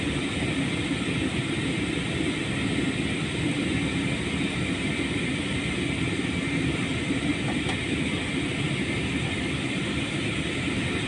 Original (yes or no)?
yes